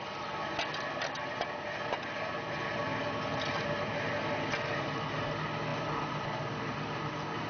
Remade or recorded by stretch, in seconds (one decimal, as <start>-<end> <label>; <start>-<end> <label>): 0.0-7.5 recorded